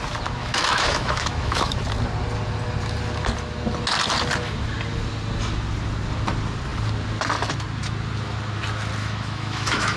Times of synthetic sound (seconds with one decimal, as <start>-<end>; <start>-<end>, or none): 0.4-1.8; 9.0-10.0